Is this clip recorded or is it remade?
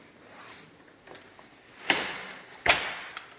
recorded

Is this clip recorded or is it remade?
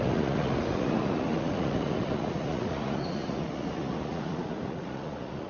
remade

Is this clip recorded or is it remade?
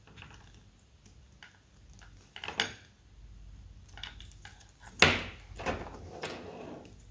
recorded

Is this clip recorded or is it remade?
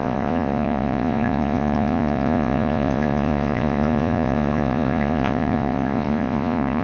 remade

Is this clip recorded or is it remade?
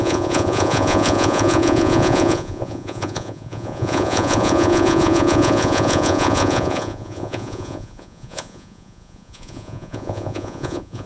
remade